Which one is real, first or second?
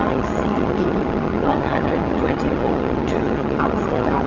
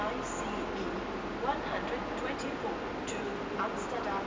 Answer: second